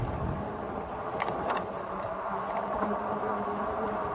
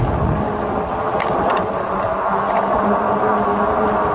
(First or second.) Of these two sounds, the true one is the second